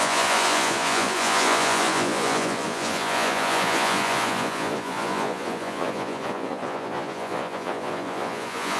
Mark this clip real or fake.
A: fake